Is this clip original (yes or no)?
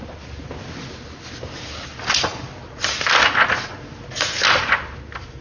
yes